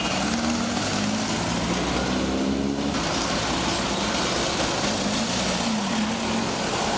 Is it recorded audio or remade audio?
recorded